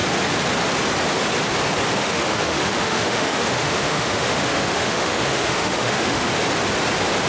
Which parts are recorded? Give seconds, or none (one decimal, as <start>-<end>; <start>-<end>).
0.0-2.0; 6.3-7.3